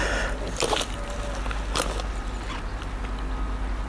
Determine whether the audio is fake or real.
real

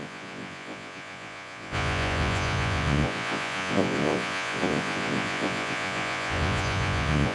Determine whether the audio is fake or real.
fake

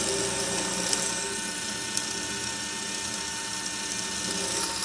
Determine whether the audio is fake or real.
real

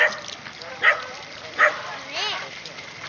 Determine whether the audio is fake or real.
real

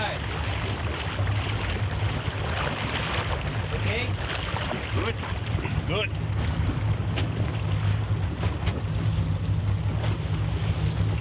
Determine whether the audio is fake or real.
real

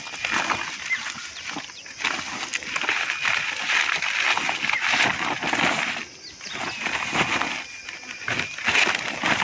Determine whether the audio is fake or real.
real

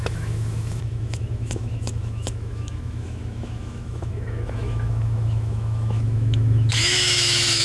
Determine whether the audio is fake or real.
fake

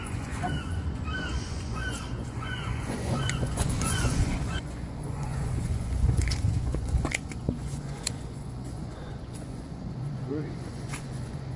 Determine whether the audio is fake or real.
fake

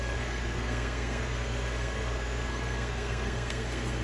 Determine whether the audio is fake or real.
fake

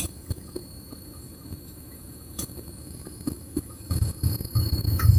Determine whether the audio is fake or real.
fake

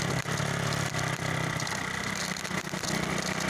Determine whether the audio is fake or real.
real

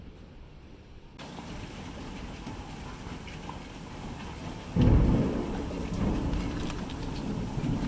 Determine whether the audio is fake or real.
real